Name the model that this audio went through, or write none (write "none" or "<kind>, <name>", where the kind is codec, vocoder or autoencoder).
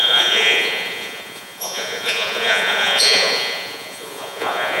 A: vocoder, Vocos